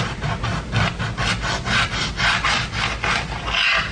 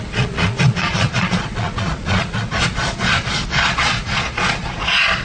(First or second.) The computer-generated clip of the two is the second